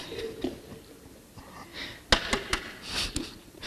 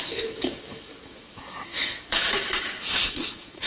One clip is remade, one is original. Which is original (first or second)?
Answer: first